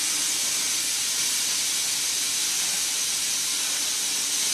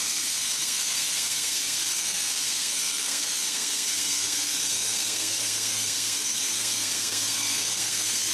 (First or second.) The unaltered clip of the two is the first